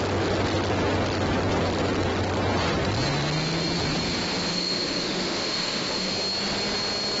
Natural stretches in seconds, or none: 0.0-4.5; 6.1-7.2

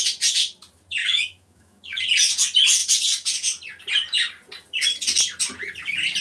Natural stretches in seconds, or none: 0.0-1.0; 2.0-6.2

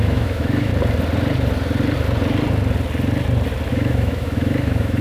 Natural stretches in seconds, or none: 0.7-3.7

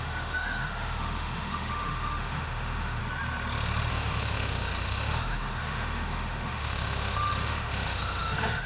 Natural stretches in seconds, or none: 3.0-3.9

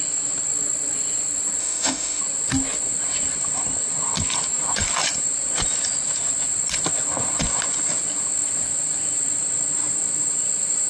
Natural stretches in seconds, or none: 0.0-1.6; 2.2-10.9